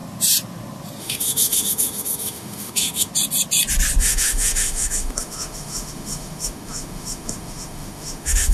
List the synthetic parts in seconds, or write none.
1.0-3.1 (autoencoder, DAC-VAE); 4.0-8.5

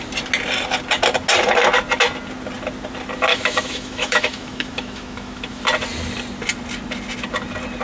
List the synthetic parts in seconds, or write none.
3.3-5.6 (autoencoder, DAC-VAE)

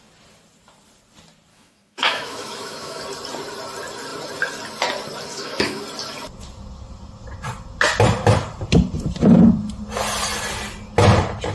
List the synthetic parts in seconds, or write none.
1.5-3.0 (autoencoder, DAC-VAE); 5.3-5.8

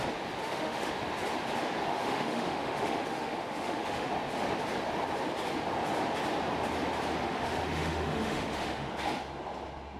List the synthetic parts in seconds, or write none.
0.4-0.9 (autoencoder, DAC-VAE); 1.9-4.1; 7.2-8.9

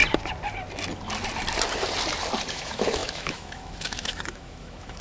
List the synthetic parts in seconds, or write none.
2.5-5.0 (autoencoder, DAC-VAE)

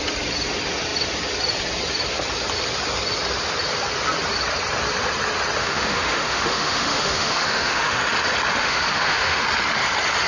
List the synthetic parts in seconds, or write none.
5.6-8.0 (autoencoder, DAC-VAE); 8.6-9.4

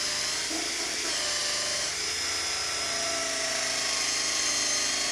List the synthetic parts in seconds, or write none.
none

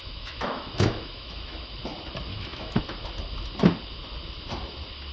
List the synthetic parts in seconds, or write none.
0.0-1.6 (autoencoder, DAC-VAE); 2.3-2.8